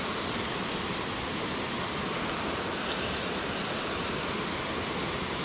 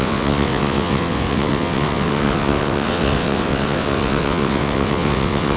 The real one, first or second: first